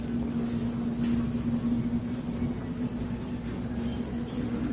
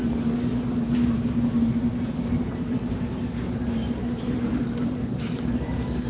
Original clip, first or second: first